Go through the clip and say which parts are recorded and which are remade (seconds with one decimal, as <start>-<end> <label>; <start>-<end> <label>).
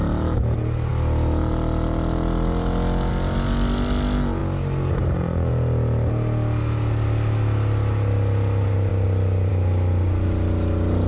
0.0-11.1 recorded